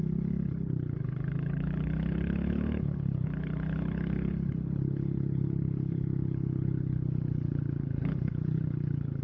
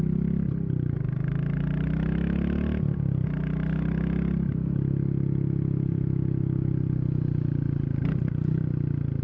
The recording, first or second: second